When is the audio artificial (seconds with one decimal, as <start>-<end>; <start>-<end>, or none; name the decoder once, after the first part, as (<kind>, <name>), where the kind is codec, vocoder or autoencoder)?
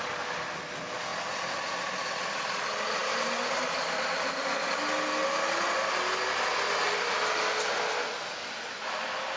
none